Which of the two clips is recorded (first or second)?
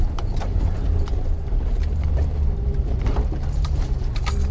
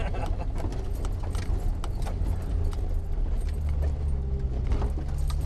second